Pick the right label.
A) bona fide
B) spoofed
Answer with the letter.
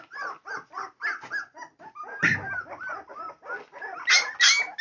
A